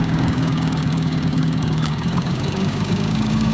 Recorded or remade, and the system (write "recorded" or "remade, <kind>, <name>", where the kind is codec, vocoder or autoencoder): remade, codec, DAC